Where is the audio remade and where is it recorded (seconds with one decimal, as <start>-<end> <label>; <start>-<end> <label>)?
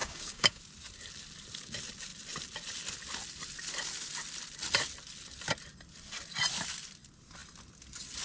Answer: 0.0-0.6 remade; 0.6-8.2 recorded